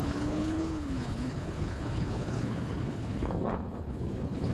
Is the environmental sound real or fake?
fake